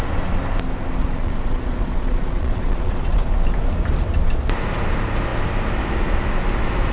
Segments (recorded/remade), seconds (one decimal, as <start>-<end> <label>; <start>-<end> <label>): 0.0-1.0 recorded; 1.0-3.2 remade; 3.2-6.9 recorded